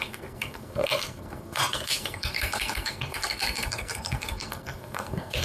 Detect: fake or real fake